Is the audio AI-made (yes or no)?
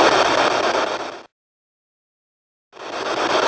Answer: no